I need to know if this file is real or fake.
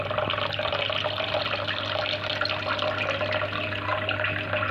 real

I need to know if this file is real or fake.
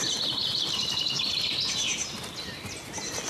real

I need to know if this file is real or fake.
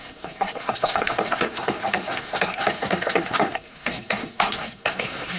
fake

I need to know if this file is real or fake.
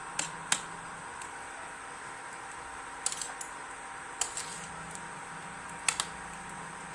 real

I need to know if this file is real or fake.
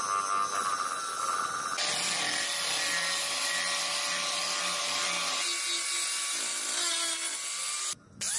real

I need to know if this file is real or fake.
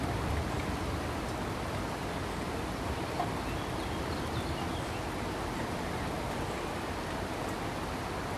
real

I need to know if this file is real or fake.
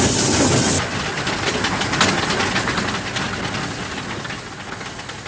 real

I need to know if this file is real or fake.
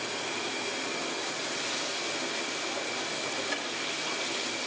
real